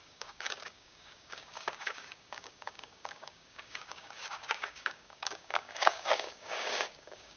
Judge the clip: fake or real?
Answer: fake